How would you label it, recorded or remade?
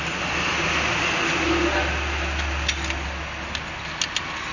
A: recorded